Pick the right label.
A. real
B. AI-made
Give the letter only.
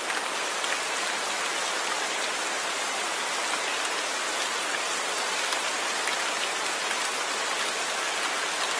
A